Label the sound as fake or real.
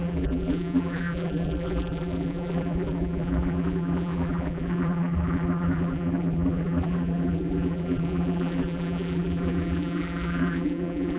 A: fake